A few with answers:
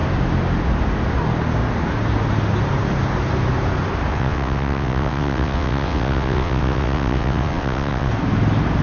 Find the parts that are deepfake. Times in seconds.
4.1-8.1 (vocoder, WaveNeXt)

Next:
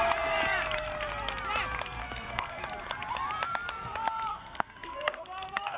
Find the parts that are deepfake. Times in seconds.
2.0-2.6 (codec, SNAC); 4.3-5.8

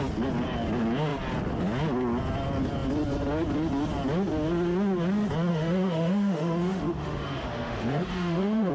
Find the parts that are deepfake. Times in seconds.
5.5-8.7 (autoencoder, DAC-VAE)

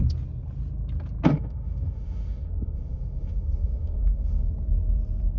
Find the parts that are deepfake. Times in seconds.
1.3-4.5 (autoencoder, DAC-VAE)

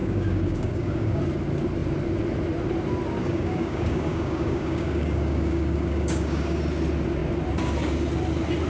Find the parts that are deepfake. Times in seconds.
0.0-1.2 (codec, DAC); 3.2-6.6

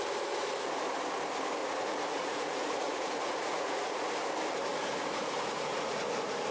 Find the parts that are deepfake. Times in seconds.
1.6-4.1 (vocoder, Vocos); 4.7-6.0